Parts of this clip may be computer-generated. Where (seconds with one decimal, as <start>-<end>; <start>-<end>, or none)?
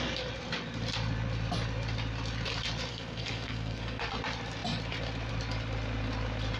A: 2.9-4.1